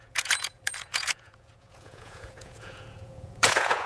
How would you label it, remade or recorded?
remade